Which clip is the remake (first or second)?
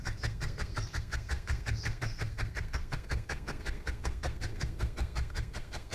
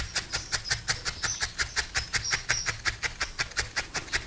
first